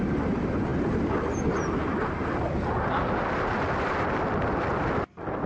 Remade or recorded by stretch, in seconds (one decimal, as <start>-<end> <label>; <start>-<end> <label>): 0.0-5.5 recorded